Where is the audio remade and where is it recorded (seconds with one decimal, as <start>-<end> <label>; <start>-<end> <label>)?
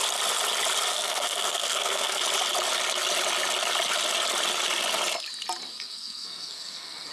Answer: 0.0-0.9 recorded; 0.9-2.2 remade; 2.2-5.7 recorded; 5.7-7.1 remade